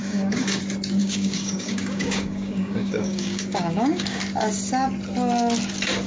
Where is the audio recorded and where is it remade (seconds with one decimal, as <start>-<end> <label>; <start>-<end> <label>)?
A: 0.0-0.6 remade; 0.6-1.0 recorded; 1.0-4.2 remade; 4.2-6.1 recorded